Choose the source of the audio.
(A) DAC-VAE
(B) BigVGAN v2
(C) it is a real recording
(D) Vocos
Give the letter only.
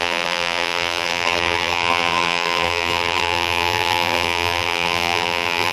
B